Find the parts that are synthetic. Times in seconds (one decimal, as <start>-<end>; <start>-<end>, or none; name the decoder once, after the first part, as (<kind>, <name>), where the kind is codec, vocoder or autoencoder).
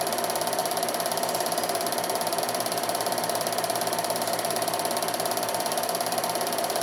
0.0-6.8 (vocoder, BigVGAN v2)